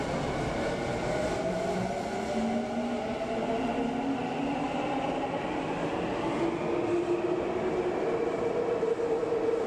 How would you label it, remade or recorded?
recorded